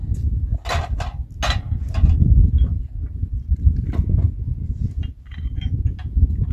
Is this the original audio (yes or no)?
yes